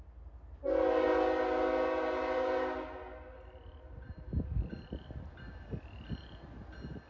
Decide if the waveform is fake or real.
real